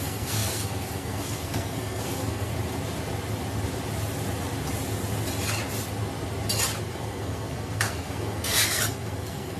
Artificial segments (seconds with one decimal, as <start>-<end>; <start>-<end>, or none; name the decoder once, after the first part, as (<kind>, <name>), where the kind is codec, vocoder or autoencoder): 0.0-2.5 (codec, SNAC); 6.9-9.6